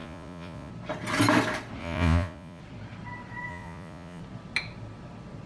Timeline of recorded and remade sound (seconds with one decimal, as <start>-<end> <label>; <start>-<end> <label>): 0.0-0.7 remade; 0.7-1.8 recorded; 1.8-2.6 remade; 2.6-3.5 recorded; 3.5-4.2 remade; 4.2-5.5 recorded